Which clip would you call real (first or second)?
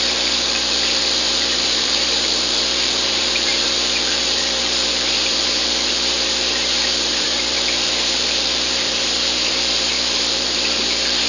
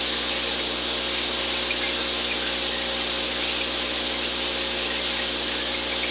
second